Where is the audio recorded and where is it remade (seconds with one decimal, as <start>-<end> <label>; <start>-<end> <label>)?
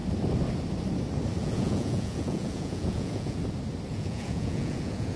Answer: 0.0-1.4 recorded; 1.4-3.4 remade; 3.4-3.9 recorded; 3.9-5.2 remade